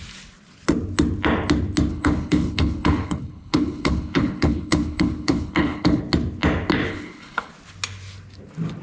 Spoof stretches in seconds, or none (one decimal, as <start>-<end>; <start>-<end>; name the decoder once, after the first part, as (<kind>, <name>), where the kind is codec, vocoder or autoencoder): 1.9-6.0 (codec, HILCodec); 6.9-7.5